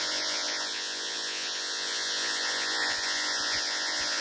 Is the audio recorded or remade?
remade